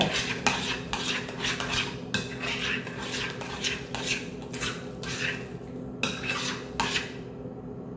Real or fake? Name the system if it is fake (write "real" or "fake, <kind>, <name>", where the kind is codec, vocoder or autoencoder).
real